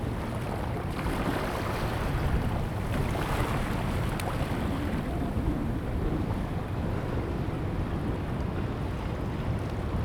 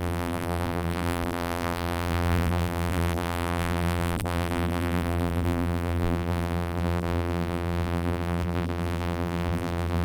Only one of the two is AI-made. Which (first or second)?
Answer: second